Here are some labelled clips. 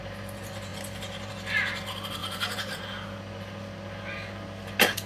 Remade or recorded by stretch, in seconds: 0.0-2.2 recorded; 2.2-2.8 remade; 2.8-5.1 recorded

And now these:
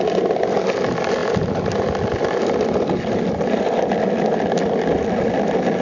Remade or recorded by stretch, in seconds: 0.0-5.8 recorded